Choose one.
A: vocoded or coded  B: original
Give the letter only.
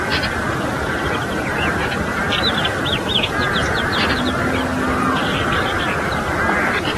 B